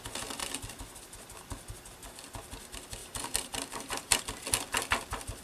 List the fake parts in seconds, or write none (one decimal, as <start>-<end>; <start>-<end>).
3.0-4.2